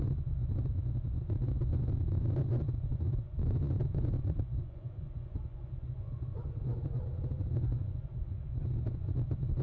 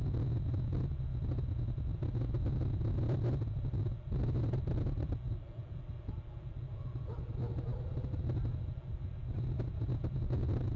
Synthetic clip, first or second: first